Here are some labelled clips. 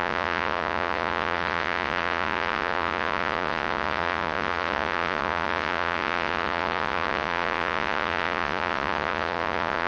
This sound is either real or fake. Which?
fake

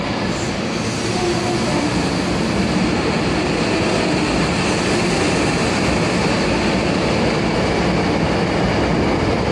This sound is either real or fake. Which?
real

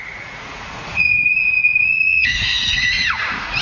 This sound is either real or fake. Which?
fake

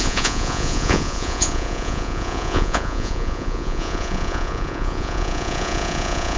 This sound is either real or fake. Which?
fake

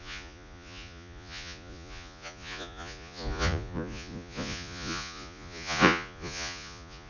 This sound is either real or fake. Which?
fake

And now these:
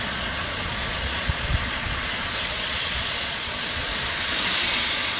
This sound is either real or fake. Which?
fake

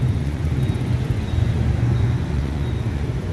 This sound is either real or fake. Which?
fake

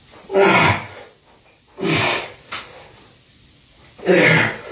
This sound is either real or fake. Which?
real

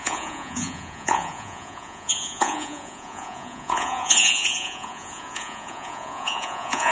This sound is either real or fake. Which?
fake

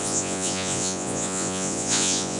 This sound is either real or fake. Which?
fake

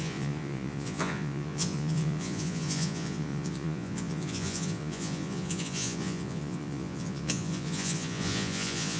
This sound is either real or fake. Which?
fake